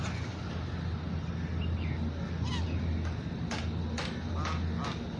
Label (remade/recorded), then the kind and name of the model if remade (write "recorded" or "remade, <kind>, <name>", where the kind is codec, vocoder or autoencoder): recorded